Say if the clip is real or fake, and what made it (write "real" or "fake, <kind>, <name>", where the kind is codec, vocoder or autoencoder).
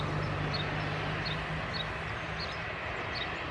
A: real